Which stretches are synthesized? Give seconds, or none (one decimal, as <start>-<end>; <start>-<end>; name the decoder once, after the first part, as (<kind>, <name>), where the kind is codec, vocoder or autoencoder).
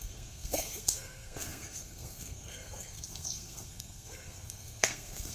0.0-5.3 (codec, SNAC)